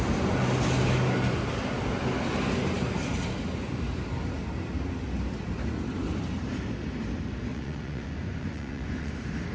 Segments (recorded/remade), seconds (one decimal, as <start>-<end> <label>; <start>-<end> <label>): 0.0-7.5 recorded; 7.5-9.1 remade; 9.1-9.5 recorded

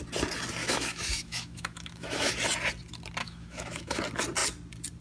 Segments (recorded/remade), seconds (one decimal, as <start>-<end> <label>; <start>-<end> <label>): 0.0-0.6 recorded; 0.6-2.3 remade; 2.3-3.2 recorded; 3.2-4.0 remade; 4.0-5.0 recorded

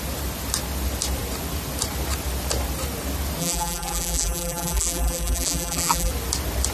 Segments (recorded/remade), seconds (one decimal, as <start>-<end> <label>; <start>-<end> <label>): 0.0-3.4 recorded; 3.4-6.1 remade; 6.1-6.7 recorded

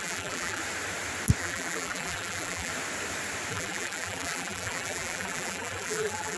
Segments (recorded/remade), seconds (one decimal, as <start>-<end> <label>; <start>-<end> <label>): 0.0-0.6 remade; 0.6-1.4 recorded; 1.4-2.7 remade; 2.7-3.5 recorded; 3.5-6.4 remade

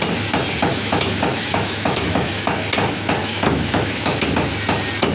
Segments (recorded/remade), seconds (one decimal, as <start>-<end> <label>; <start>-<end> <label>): 0.0-0.7 recorded; 0.7-2.3 remade; 2.3-3.2 recorded; 3.2-4.2 remade; 4.2-5.1 recorded

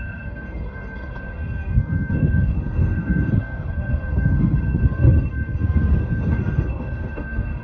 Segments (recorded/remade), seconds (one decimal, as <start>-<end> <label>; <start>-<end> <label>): 0.0-7.6 remade

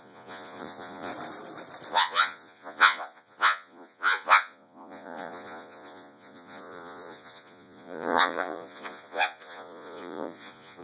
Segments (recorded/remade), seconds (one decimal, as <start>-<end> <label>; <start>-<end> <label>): 0.0-1.1 remade; 1.1-1.9 recorded; 1.9-10.8 remade

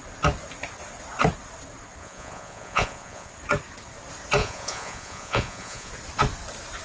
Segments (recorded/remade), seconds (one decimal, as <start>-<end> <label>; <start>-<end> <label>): 0.0-2.0 recorded; 2.0-3.3 remade; 3.3-4.4 recorded; 4.4-5.9 remade; 5.9-6.8 recorded